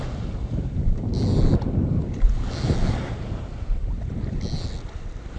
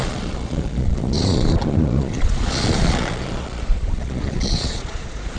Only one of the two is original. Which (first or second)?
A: first